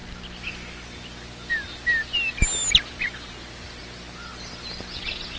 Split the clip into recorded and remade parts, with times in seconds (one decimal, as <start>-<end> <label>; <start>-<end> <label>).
0.0-5.4 recorded